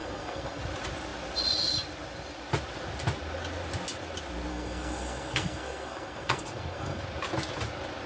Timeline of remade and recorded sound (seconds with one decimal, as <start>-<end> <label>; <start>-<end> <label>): 0.0-0.6 remade; 0.6-4.5 recorded; 4.5-7.0 remade; 7.0-8.1 recorded